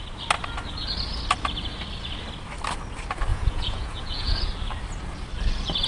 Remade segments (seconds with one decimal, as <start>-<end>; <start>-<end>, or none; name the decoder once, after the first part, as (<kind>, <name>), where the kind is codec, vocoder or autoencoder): 3.3-4.4 (vocoder, Vocos)